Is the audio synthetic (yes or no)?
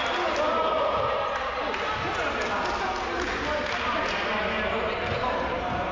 no